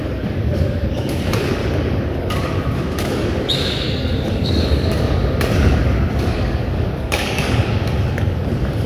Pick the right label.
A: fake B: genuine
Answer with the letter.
A